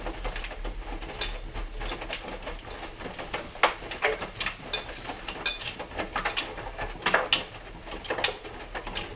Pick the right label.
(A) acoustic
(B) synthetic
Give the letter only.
A